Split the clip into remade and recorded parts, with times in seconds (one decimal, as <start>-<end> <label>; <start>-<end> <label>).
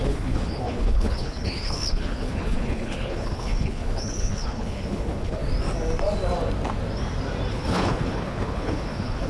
0.0-5.4 remade; 5.4-7.5 recorded; 7.5-9.3 remade